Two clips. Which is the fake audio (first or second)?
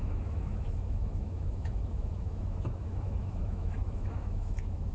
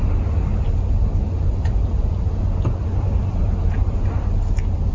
first